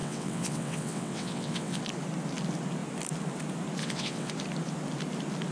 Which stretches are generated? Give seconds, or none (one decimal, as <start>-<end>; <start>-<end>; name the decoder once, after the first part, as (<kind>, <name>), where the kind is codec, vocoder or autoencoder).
0.0-1.8 (vocoder, WaveNeXt); 3.8-4.3